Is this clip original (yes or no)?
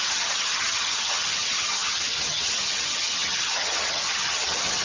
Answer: no